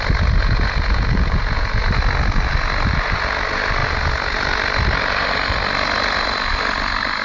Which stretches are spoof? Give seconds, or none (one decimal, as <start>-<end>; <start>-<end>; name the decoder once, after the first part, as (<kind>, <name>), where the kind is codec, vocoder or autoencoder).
0.4-2.0 (vocoder, Vocos)